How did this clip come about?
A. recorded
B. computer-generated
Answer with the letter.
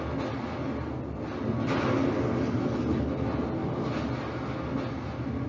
A